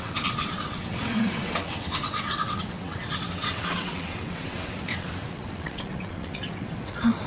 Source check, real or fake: fake